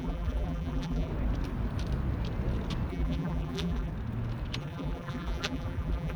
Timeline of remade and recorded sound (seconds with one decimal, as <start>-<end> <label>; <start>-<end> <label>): 0.0-1.1 remade; 1.1-2.9 recorded; 2.9-3.9 remade; 3.9-4.6 recorded; 4.6-6.2 remade

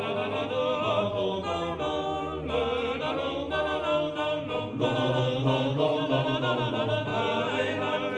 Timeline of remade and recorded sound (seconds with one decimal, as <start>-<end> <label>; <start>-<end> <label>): 0.0-8.2 recorded

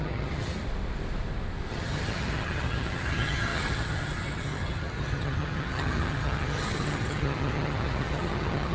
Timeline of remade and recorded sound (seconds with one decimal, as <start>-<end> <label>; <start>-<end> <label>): 0.0-0.6 remade; 0.6-1.7 recorded; 1.7-8.7 remade

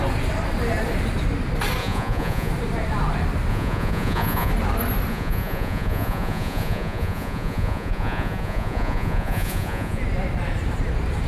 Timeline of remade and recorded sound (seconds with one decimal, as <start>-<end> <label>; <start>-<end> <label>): 0.0-1.8 recorded; 1.8-2.5 remade; 2.5-3.5 recorded; 3.5-4.5 remade; 4.5-5.1 recorded; 5.1-10.0 remade; 10.0-11.3 recorded

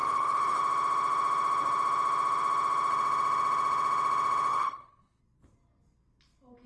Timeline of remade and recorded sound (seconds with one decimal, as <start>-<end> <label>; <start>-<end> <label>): 0.0-0.6 remade; 0.6-4.5 recorded; 4.5-5.2 remade; 5.2-6.7 recorded